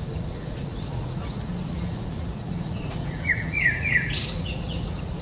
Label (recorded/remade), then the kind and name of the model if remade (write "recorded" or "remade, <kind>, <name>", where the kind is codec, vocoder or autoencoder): remade, vocoder, Vocos